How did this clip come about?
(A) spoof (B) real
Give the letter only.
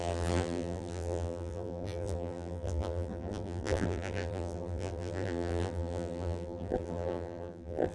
A